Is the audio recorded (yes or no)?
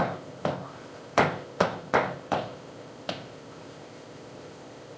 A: no